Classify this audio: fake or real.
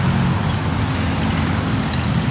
real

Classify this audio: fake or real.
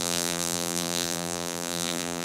fake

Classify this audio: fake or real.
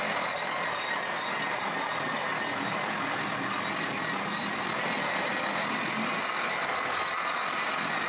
real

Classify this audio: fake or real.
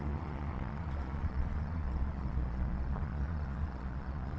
fake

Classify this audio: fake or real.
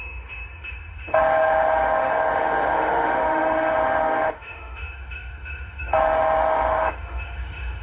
fake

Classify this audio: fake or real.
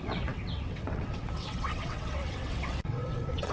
fake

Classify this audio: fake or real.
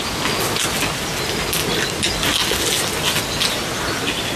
real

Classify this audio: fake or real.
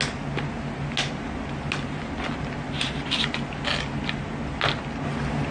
real